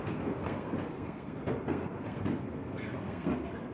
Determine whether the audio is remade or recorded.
remade